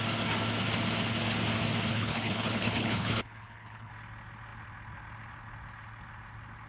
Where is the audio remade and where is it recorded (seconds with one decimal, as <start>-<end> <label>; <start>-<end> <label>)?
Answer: 0.0-1.9 recorded; 1.9-3.9 remade; 3.9-6.7 recorded